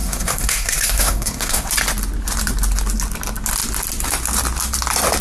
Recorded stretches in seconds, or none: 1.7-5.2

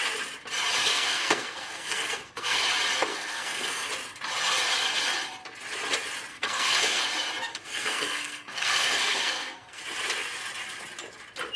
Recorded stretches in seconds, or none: 0.0-0.8; 2.6-3.1; 3.9-6.3; 7.0-7.5; 9.8-11.6

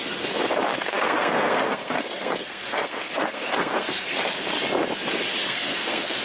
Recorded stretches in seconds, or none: 0.0-0.7; 4.4-5.4

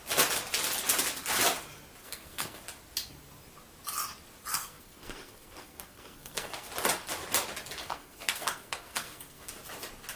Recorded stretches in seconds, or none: 0.0-2.0; 2.6-4.5; 6.7-7.8; 9.5-10.2

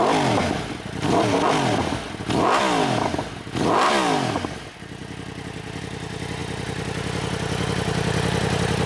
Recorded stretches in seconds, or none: 0.0-8.9

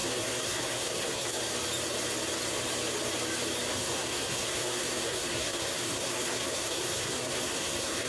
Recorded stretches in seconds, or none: 1.4-3.7

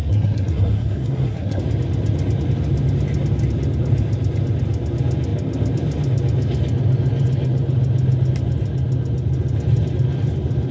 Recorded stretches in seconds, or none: 1.6-10.7